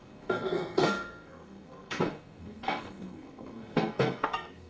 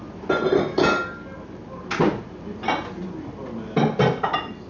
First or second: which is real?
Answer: second